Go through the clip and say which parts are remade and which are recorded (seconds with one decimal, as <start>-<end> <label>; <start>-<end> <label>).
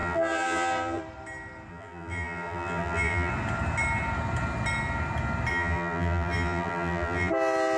0.0-1.0 remade; 1.0-1.7 recorded; 1.7-3.3 remade; 3.3-5.5 recorded; 5.5-7.3 remade; 7.3-7.8 recorded